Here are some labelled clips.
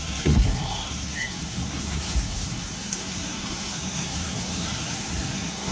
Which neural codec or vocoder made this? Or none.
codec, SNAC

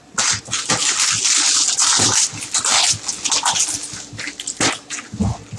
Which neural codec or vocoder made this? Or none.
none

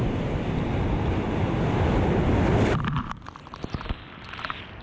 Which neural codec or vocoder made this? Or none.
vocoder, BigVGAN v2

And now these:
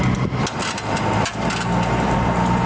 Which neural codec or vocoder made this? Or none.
none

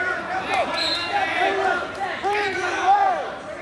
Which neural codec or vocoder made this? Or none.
vocoder, BigVGAN v2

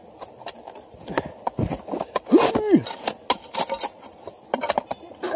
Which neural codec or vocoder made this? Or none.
none